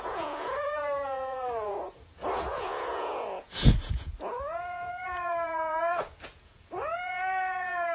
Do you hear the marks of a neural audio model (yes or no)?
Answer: yes